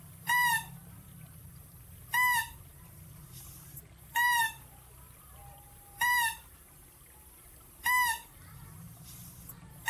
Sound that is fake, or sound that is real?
fake